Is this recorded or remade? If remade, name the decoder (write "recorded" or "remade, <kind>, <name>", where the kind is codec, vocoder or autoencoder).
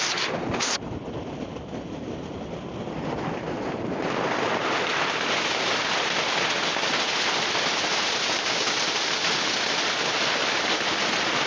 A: recorded